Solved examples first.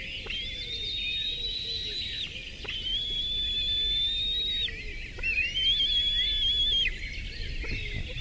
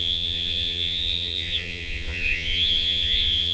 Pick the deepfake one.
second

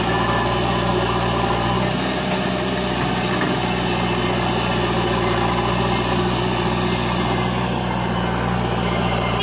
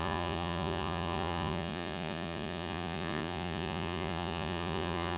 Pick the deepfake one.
second